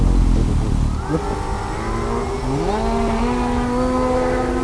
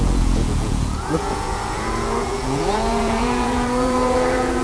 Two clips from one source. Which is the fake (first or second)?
second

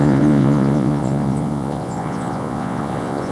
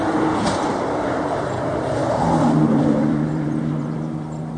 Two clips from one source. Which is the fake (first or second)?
first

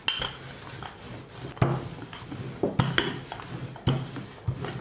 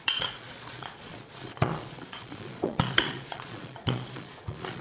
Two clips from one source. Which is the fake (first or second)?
second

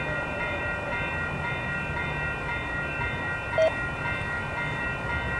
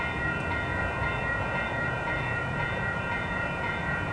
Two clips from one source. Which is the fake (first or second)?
second